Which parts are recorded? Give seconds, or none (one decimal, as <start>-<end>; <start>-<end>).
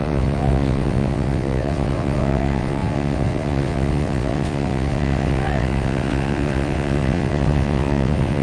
none